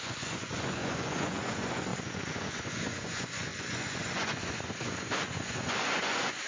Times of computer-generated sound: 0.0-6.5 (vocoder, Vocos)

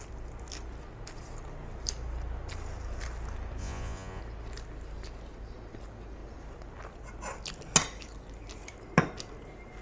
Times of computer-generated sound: 3.6-4.2 (vocoder, Vocos)

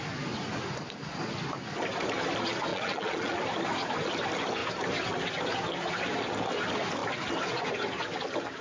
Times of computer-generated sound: 2.7-3.4 (vocoder, Vocos)

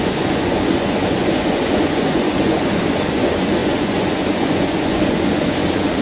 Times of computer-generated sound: 0.0-6.0 (vocoder, Vocos)

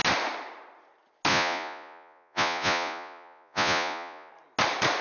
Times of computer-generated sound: 1.3-4.3 (vocoder, Vocos)

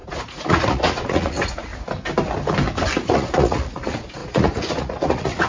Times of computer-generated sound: 0.0-1.7 (vocoder, Vocos); 3.1-5.5

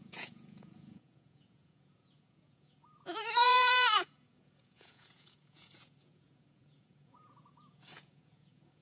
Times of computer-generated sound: 0.0-8.8 (vocoder, Vocos)

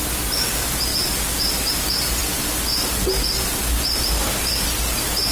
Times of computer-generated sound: none